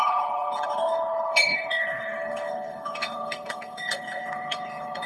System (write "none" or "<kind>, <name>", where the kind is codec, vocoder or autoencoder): codec, HILCodec